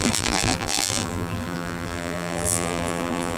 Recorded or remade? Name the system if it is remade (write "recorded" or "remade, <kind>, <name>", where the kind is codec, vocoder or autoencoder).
remade, vocoder, BigVGAN v2